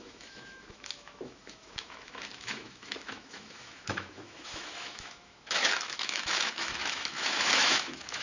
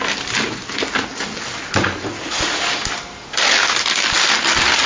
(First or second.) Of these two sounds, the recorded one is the second